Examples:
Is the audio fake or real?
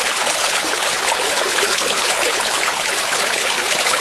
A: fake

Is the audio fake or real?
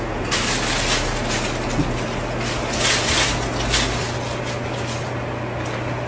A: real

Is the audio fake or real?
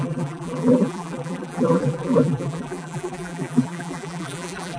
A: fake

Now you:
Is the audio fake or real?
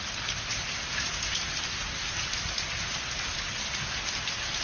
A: real